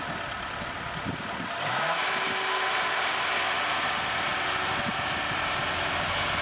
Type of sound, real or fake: real